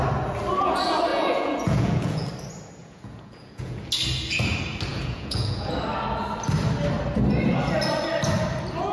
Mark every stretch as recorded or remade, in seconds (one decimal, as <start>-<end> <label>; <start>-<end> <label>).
0.0-1.1 recorded; 1.1-2.3 remade; 2.3-2.8 recorded; 2.8-3.8 remade; 3.8-4.9 recorded; 4.9-5.7 remade; 5.7-8.9 recorded